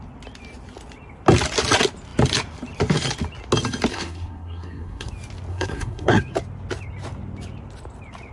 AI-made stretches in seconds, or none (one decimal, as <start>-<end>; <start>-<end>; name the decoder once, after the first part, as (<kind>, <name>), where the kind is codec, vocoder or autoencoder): 3.9-5.1 (codec, SNAC); 5.5-6.2

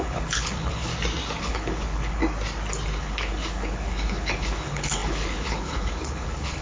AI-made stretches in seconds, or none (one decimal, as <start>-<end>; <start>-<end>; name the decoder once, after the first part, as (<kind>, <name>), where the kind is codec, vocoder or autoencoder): 0.0-0.9 (codec, HILCodec); 1.4-2.2; 3.0-6.6